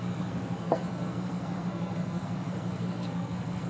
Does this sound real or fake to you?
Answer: fake